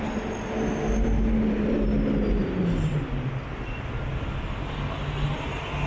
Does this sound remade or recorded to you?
recorded